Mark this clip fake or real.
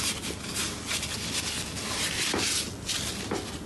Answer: real